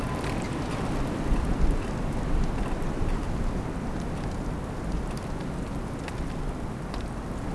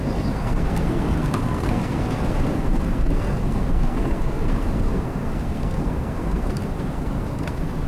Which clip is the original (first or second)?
first